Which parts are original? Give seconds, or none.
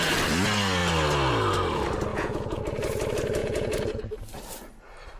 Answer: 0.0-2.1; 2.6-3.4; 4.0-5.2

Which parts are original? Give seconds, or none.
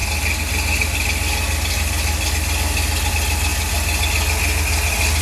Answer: 0.0-5.2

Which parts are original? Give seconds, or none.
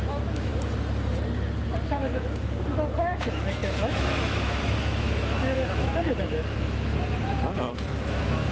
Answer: 0.5-1.9; 6.9-7.7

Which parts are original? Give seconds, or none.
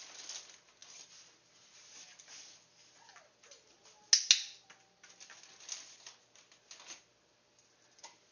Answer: 0.0-8.3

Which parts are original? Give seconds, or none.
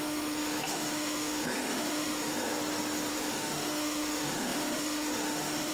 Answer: 2.5-3.1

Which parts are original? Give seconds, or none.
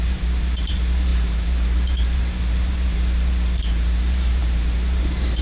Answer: none